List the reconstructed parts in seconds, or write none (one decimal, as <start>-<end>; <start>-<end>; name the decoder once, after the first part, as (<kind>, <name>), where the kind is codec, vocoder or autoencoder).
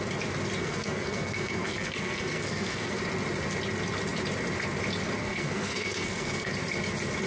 0.6-3.0 (codec, SNAC); 5.2-6.5